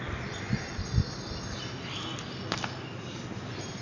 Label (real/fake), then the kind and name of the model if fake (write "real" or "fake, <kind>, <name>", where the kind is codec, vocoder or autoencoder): real